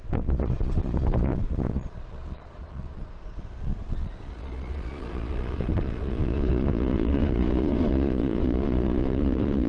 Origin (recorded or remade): remade